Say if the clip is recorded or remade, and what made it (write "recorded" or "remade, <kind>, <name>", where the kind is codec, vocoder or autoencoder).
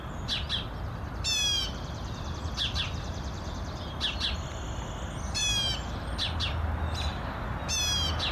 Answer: recorded